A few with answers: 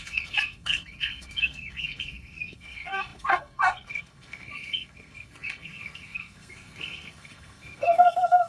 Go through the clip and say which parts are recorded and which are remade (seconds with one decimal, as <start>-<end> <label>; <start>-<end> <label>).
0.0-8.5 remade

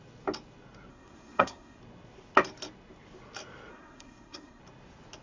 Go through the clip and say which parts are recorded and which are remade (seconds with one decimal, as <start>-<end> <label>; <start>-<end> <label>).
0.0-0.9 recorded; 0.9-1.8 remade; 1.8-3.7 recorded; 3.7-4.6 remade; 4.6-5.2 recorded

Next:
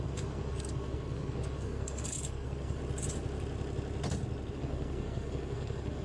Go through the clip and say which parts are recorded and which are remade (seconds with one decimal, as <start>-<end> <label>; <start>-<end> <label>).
0.0-2.8 remade; 2.8-4.5 recorded; 4.5-6.0 remade

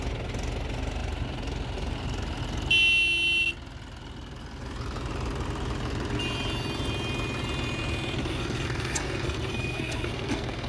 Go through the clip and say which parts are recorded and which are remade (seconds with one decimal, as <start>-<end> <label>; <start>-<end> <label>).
0.0-8.2 recorded; 8.2-10.7 remade

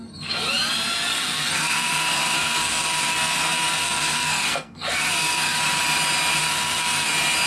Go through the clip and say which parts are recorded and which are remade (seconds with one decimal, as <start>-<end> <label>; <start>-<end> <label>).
0.0-0.5 remade; 0.5-1.1 recorded; 1.1-5.6 remade; 5.6-6.4 recorded; 6.4-7.1 remade; 7.1-7.5 recorded

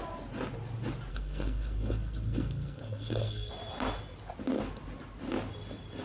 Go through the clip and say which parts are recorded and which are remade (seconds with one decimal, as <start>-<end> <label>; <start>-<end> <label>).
0.0-1.1 recorded; 1.1-3.5 remade; 3.5-6.0 recorded

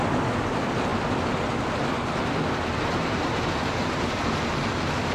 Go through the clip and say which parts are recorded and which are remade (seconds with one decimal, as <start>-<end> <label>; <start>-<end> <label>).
0.0-5.1 recorded